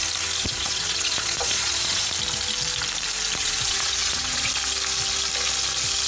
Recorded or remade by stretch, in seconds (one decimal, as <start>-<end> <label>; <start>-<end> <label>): 0.0-0.4 recorded; 0.4-2.1 remade; 2.1-3.4 recorded; 3.4-4.5 remade; 4.5-6.1 recorded